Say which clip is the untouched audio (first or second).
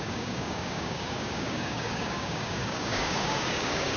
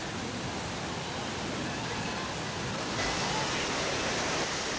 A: second